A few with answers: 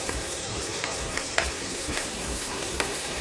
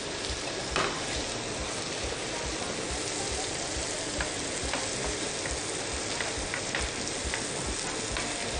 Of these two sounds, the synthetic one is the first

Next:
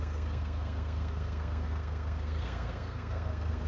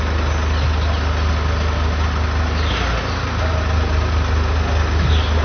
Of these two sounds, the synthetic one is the first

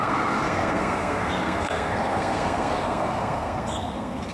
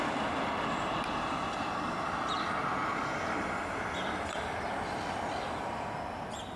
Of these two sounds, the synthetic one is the first